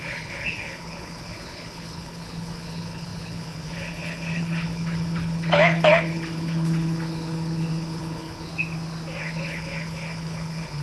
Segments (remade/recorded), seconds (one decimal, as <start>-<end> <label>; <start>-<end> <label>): 0.0-8.5 remade; 8.5-9.2 recorded; 9.2-10.8 remade